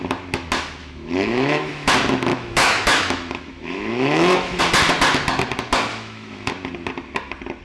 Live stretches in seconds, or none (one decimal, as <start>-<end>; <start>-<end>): 0.0-0.8; 1.9-2.3; 4.6-5.9; 6.5-7.6